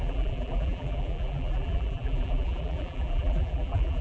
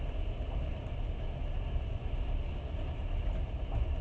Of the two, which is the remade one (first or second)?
first